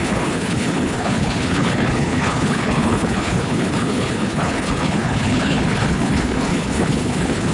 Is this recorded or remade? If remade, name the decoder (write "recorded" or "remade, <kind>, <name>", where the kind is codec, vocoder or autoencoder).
remade, codec, HILCodec